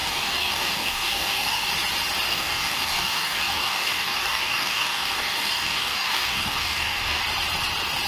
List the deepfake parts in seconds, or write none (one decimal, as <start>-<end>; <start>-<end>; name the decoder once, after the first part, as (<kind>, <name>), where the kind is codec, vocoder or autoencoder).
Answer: 0.0-1.7 (codec, DAC); 2.3-7.2